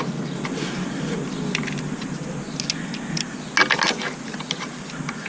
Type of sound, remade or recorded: recorded